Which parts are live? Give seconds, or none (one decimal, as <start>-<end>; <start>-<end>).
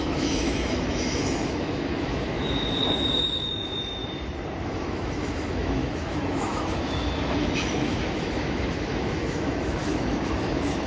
4.0-4.8